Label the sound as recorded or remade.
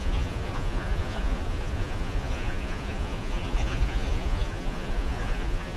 remade